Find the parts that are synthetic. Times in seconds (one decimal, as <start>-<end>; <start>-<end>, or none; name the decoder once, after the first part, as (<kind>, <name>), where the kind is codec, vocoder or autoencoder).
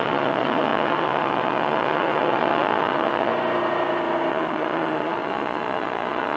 0.0-3.3 (vocoder, Vocos); 4.3-6.4